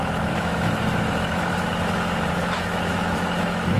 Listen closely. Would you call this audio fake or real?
fake